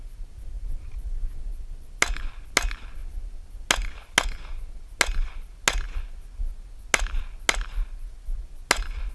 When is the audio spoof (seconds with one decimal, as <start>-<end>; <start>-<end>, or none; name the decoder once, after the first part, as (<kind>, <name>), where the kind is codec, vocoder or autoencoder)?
none